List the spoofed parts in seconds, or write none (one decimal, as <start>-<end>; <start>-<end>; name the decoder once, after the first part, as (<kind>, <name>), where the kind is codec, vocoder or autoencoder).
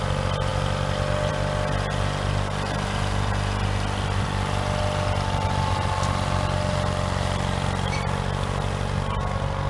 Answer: none